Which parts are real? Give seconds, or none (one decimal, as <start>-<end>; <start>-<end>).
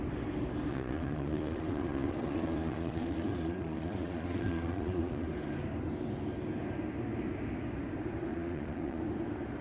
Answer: 0.0-0.7; 5.3-8.3; 9.0-9.6